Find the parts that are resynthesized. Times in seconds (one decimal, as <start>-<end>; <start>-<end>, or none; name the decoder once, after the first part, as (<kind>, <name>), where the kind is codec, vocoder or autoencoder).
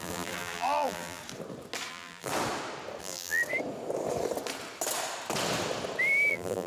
0.0-1.2 (vocoder, BigVGAN v2); 1.9-2.3; 3.0-3.4; 6.3-6.7